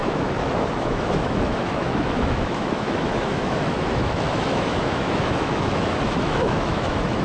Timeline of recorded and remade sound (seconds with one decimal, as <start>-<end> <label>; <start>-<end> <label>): 0.0-7.2 remade